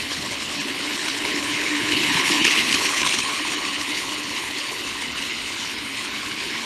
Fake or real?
fake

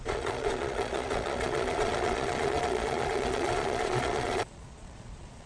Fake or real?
fake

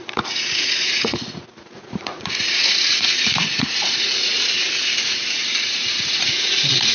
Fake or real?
fake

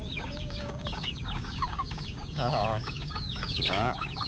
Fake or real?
fake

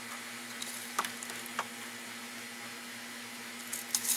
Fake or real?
real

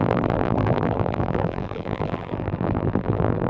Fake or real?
fake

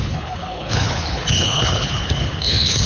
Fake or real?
fake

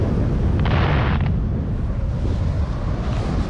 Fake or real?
real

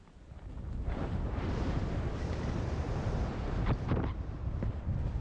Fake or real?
fake